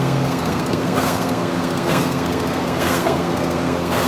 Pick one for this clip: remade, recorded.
remade